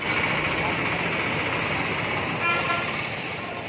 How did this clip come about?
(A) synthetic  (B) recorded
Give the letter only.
B